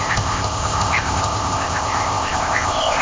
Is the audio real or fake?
fake